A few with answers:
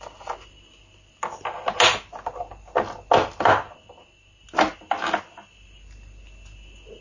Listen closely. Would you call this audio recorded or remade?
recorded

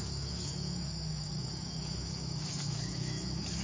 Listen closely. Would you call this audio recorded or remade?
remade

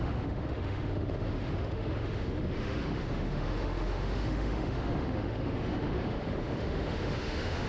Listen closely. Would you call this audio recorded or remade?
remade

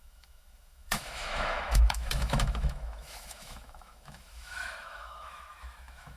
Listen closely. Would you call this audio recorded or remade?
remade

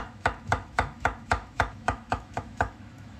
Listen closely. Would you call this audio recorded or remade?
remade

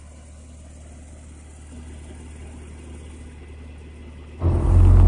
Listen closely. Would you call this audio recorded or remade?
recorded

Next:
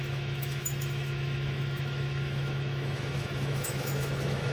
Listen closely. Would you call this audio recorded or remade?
remade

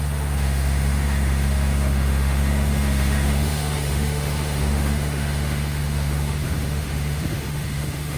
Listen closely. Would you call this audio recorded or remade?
remade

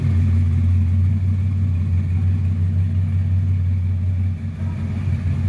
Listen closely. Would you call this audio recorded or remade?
recorded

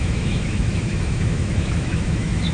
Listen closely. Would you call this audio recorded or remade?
remade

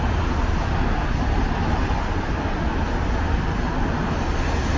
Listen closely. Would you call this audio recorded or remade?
recorded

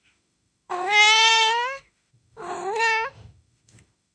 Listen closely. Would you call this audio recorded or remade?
remade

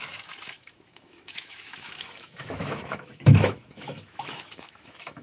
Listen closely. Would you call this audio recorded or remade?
remade